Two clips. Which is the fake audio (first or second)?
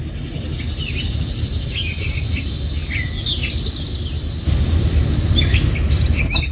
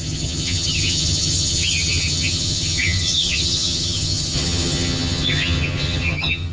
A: second